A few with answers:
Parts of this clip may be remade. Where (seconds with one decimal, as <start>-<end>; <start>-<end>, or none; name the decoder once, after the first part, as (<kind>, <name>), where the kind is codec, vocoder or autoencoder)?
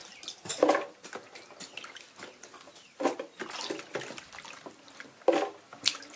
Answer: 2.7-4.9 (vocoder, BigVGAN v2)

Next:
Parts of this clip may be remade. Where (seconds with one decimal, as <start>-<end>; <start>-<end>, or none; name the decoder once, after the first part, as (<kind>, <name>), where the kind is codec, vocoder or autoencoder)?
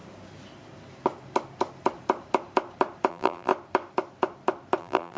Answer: 3.1-3.5 (vocoder, BigVGAN v2); 4.8-5.2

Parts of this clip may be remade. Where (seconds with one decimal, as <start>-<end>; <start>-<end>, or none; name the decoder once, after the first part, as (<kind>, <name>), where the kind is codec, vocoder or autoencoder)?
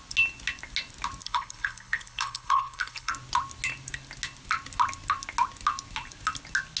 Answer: 1.2-3.1 (codec, HILCodec)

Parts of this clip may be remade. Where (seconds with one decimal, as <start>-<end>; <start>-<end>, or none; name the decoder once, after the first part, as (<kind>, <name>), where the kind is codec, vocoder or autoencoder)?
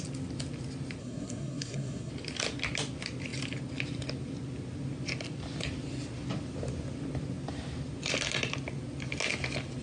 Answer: 1.0-2.1 (codec, SNAC)